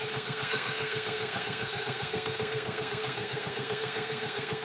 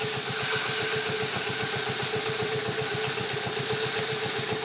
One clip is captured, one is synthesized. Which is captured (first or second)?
second